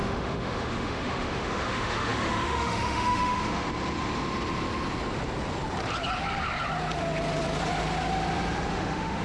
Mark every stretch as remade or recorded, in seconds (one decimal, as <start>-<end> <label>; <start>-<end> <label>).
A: 0.0-3.7 remade; 3.7-8.7 recorded; 8.7-9.2 remade